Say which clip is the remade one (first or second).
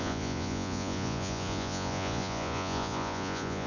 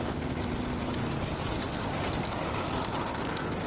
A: first